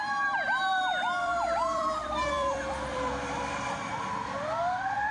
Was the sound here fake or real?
fake